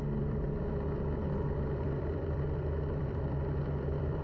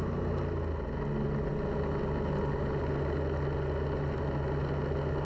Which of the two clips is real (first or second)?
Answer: second